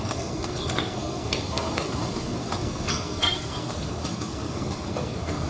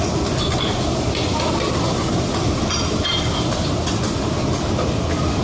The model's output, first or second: first